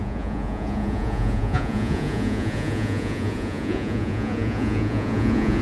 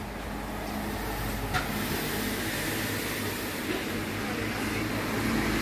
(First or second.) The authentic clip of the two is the second